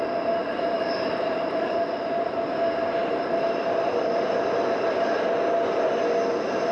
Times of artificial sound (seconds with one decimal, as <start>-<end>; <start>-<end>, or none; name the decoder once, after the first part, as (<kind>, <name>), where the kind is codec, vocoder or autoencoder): 0.4-2.2 (vocoder, BigVGAN v2); 3.0-4.4